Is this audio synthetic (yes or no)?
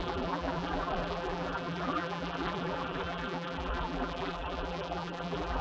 yes